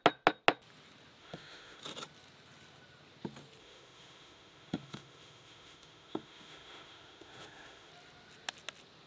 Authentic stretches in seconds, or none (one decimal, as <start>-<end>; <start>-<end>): 0.0-1.2; 1.8-3.6; 7.9-9.1